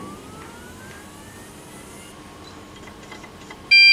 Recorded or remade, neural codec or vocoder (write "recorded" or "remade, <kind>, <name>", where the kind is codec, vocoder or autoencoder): recorded